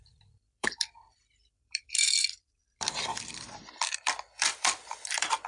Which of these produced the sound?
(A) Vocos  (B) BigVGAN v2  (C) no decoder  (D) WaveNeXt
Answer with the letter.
B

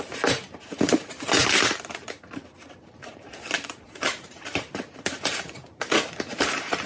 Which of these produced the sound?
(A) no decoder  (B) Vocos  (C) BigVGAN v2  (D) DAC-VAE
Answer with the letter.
C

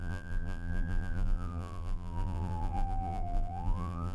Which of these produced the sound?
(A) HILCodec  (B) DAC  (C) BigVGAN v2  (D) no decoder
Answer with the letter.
C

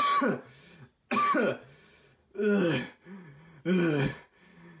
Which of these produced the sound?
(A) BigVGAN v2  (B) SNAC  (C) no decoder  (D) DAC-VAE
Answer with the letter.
C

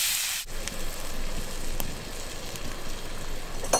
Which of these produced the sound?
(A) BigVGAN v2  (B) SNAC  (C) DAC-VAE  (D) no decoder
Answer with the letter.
D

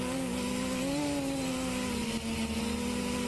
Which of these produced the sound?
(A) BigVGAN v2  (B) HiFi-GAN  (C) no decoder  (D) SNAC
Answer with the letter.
C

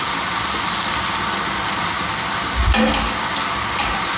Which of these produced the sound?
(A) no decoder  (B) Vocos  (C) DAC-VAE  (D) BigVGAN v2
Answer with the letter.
A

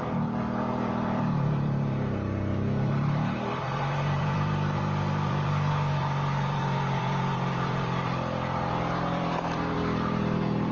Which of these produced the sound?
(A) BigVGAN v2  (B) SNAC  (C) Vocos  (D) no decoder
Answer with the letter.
A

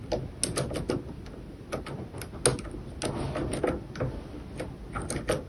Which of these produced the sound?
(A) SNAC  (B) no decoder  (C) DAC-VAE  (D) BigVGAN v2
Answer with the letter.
B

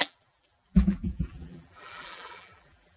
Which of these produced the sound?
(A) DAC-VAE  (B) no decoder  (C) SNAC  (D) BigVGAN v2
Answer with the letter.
D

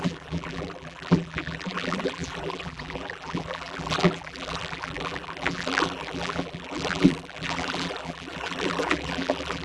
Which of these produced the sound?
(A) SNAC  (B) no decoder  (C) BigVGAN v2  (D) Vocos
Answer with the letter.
C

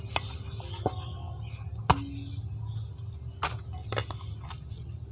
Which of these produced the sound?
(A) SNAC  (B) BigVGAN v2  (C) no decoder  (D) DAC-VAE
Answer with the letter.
C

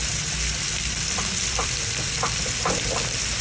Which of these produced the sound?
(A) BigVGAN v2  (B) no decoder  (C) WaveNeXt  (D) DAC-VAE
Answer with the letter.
A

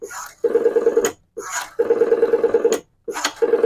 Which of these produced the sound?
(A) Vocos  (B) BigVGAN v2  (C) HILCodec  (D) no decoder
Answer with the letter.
D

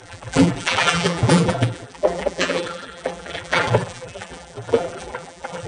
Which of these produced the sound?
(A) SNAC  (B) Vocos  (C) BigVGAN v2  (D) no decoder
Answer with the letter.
C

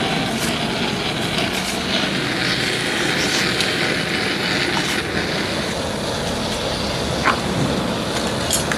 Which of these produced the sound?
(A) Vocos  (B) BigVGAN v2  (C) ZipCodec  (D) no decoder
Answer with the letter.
D